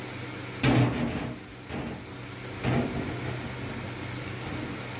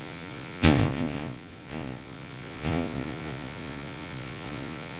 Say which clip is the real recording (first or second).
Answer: first